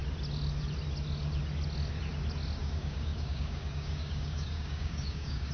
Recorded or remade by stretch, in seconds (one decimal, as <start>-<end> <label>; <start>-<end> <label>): 0.0-2.6 recorded; 2.6-5.5 remade